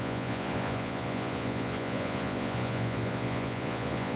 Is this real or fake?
fake